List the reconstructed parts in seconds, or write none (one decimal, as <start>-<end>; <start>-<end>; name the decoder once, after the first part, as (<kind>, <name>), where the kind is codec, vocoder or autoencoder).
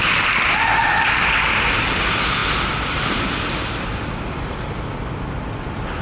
none